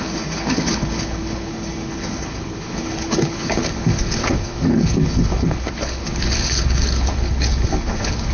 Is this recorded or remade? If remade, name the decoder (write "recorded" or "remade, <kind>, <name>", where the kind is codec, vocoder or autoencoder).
remade, codec, HILCodec